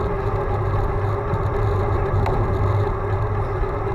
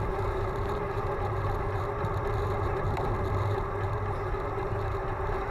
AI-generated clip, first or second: second